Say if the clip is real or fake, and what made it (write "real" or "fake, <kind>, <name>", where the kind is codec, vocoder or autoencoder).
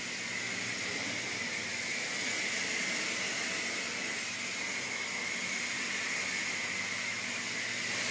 real